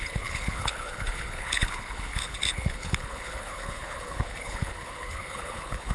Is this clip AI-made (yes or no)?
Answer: yes